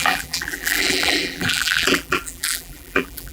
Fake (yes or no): yes